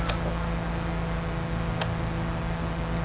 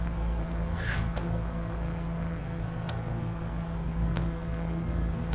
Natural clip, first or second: first